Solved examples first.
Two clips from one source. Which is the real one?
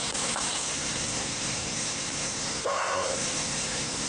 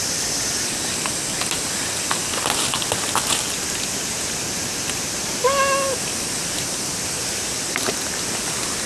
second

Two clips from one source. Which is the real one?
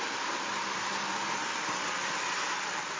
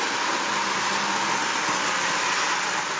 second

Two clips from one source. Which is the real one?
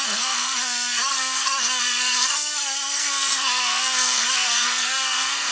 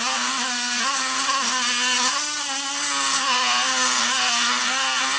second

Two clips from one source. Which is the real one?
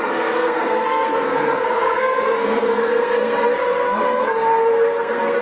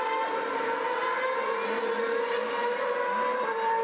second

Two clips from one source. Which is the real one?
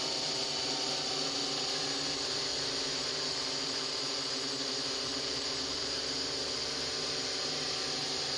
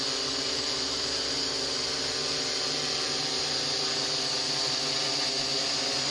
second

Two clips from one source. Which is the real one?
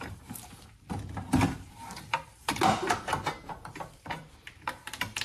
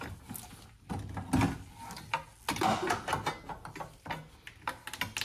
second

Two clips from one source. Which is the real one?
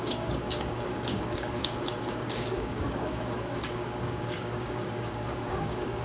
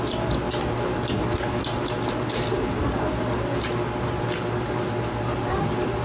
second